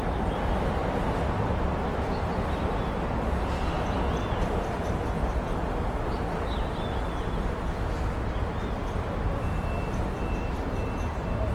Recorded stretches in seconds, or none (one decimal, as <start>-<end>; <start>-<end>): 0.8-4.3